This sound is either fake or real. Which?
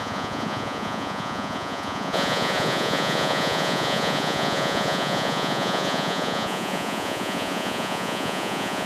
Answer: fake